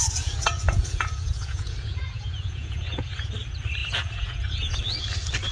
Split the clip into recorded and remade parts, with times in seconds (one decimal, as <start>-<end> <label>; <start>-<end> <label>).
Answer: 0.0-3.3 remade; 3.3-3.8 recorded; 3.8-4.8 remade; 4.8-5.5 recorded